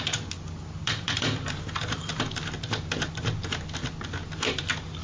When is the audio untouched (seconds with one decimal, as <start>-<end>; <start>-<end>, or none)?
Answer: 0.0-0.8; 2.5-5.0